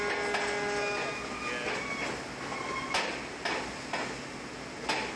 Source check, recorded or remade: recorded